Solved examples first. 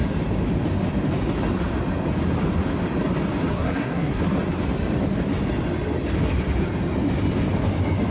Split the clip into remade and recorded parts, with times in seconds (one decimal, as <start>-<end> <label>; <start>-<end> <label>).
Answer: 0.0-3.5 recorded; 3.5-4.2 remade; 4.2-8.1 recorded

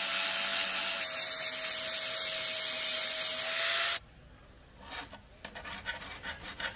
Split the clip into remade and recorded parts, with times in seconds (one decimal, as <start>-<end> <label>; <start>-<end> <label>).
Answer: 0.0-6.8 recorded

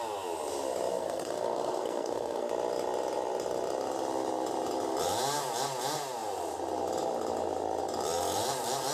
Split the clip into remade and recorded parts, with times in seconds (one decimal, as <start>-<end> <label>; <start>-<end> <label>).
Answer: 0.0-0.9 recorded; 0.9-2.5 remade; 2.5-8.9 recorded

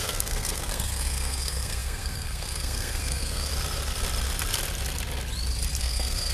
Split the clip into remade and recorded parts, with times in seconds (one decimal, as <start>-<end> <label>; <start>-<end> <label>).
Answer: 0.0-3.5 remade; 3.5-5.8 recorded; 5.8-6.3 remade

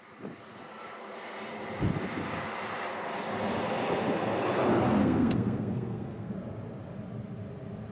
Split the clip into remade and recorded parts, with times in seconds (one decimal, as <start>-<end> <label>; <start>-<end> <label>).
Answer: 0.0-5.0 recorded; 5.0-6.3 remade; 6.3-7.9 recorded

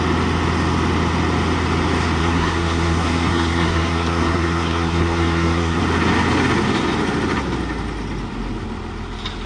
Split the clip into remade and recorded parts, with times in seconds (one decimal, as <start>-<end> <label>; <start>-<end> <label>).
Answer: 0.0-2.2 recorded; 2.2-5.8 remade; 5.8-9.5 recorded